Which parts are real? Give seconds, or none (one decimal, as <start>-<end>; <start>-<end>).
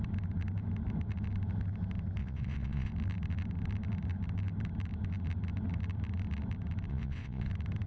0.0-2.2; 2.9-6.9; 7.5-7.9